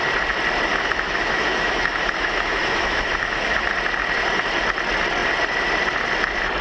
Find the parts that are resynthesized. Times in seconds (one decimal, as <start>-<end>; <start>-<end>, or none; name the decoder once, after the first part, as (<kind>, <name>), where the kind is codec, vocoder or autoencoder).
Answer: 0.7-3.7 (autoencoder, DAC-VAE)